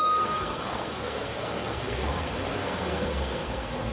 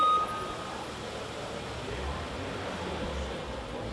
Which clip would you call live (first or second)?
second